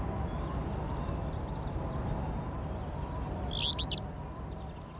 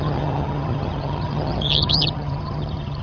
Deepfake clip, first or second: second